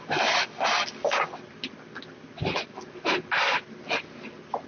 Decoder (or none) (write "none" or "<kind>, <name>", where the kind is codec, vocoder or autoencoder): none